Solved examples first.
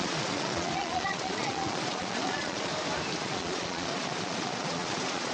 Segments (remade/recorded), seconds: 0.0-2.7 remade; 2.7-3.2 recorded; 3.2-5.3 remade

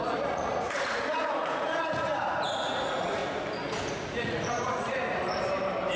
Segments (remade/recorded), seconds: 0.0-3.2 remade; 3.2-3.9 recorded; 3.9-5.0 remade; 5.0-6.0 recorded

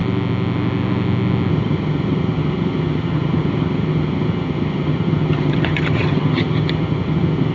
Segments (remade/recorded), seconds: 0.0-1.5 recorded; 1.5-7.5 remade

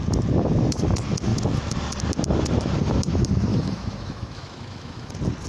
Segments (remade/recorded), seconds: 0.0-3.5 recorded; 3.5-5.1 remade; 5.1-5.5 recorded

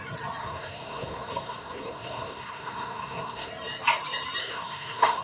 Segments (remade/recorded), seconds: 0.0-0.4 recorded; 0.4-3.5 remade; 3.5-4.4 recorded; 4.4-5.2 remade

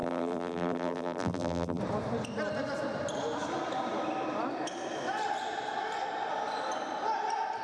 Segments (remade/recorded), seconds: 0.0-1.8 remade; 1.8-7.6 recorded